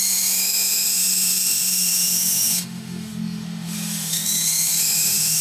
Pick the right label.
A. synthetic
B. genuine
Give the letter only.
A